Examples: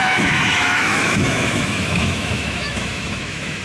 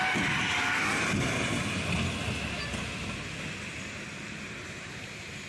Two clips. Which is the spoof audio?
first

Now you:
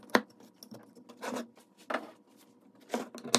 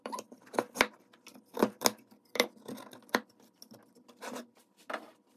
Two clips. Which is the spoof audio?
second